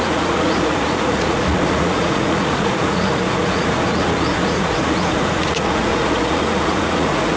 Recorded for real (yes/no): no